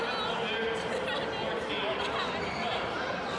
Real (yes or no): yes